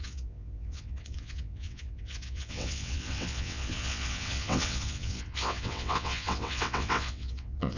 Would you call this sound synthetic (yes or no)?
yes